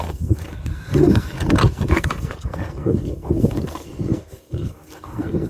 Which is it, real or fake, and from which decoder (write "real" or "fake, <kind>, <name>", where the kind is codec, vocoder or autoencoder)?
fake, codec, SNAC